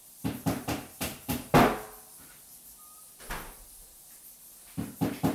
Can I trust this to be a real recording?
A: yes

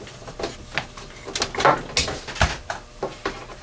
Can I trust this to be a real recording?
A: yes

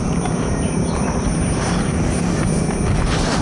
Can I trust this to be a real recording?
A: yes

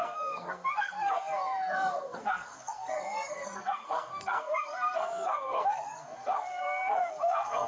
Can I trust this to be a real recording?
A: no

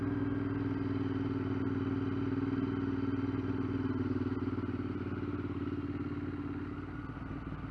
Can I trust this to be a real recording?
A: yes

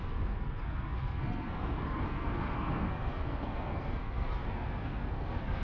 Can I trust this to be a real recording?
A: no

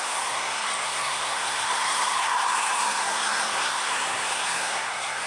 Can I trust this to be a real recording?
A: no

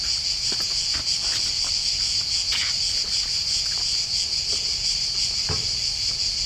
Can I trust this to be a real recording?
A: yes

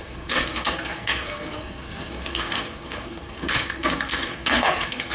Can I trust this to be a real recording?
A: no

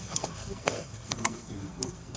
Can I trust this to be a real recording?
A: no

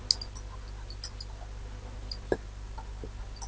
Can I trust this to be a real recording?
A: yes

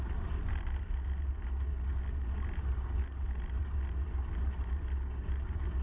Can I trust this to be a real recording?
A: yes